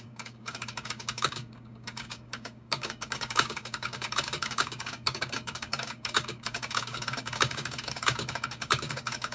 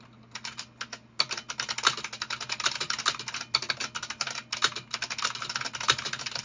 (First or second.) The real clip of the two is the second